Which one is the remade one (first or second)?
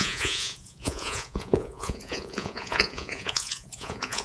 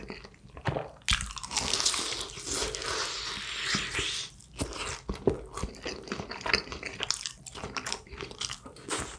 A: first